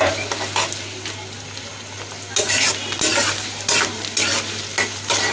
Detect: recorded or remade recorded